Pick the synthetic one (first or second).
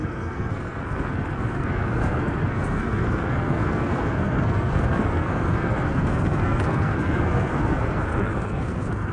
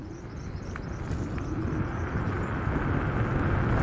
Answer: first